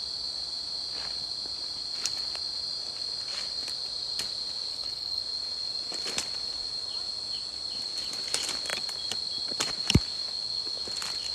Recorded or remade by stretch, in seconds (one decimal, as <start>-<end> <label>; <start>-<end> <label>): 0.0-4.7 recorded; 4.7-5.2 remade; 5.2-11.3 recorded